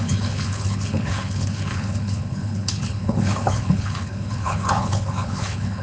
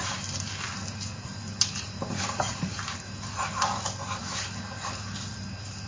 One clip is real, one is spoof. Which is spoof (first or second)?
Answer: first